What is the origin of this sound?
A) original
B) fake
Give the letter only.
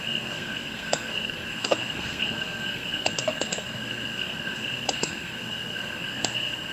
B